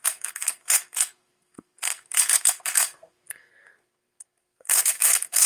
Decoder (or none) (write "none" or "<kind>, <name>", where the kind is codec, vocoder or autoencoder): codec, SNAC